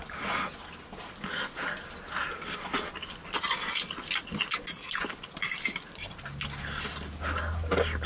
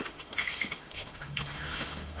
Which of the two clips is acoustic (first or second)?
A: first